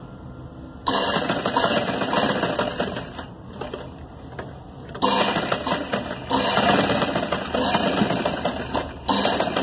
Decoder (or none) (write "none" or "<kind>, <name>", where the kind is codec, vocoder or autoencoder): none